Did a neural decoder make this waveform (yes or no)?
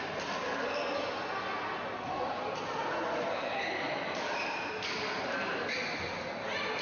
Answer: no